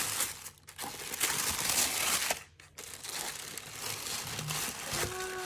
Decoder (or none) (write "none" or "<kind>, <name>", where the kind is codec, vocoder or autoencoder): none